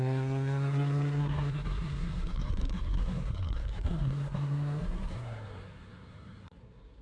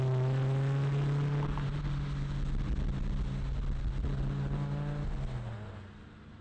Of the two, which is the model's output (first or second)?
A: first